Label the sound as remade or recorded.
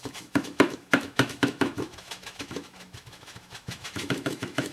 remade